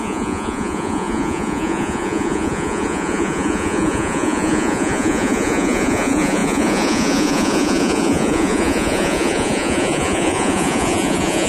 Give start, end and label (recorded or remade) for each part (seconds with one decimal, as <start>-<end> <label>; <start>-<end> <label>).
0.0-11.5 remade